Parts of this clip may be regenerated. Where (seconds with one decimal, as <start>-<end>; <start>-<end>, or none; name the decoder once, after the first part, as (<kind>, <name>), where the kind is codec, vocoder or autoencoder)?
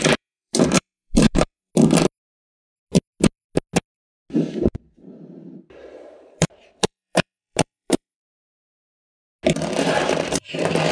0.0-1.7 (vocoder, BigVGAN v2); 4.5-8.3; 9.8-10.9